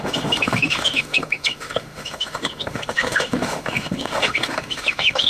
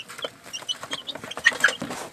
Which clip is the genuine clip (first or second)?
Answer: second